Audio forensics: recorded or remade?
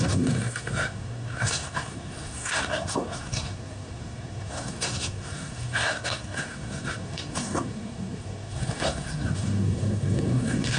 remade